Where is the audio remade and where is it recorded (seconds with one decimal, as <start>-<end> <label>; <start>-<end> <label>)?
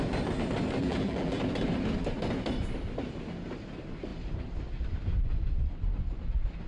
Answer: 0.0-0.8 recorded; 0.8-1.4 remade; 1.4-6.7 recorded